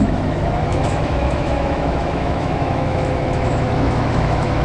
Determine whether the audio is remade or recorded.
remade